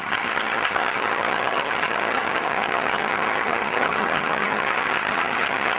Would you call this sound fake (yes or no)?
yes